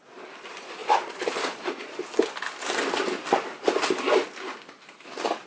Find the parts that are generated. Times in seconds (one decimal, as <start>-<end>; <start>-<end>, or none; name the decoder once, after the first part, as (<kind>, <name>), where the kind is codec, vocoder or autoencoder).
0.8-2.0 (vocoder, Vocos)